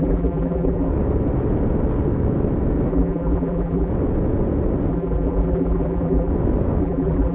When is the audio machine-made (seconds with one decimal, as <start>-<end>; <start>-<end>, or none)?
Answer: 0.0-0.9; 2.9-3.9; 4.9-6.3; 6.8-7.3